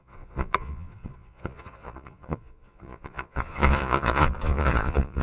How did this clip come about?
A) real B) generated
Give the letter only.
B